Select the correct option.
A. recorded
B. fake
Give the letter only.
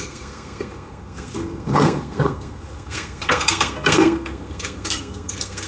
B